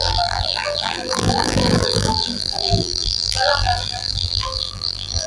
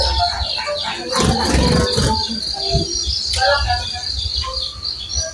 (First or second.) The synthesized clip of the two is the first